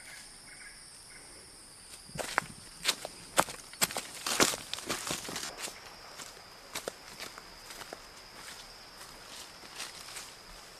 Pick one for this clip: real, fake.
real